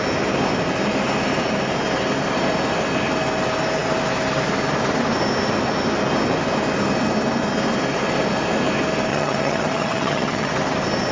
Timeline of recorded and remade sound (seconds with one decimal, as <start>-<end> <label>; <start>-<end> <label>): 0.0-9.1 recorded; 9.1-10.5 remade; 10.5-11.1 recorded